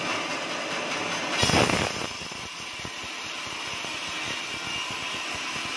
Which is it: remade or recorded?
recorded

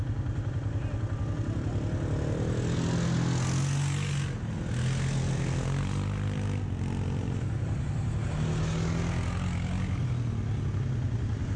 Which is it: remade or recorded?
recorded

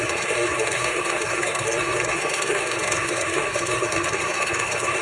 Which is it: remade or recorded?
remade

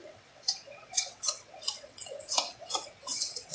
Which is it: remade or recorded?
remade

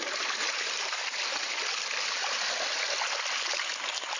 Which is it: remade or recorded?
recorded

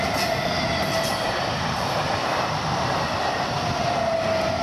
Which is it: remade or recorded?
recorded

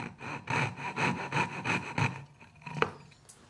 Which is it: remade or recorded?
recorded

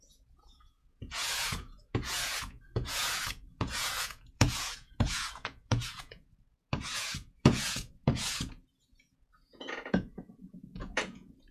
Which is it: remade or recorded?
remade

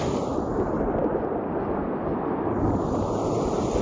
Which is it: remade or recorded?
recorded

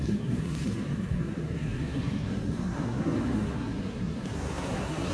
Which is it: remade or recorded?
remade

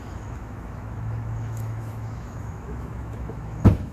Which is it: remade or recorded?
remade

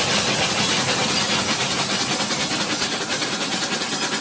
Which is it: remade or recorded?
recorded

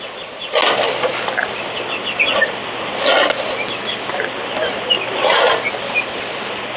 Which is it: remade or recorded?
recorded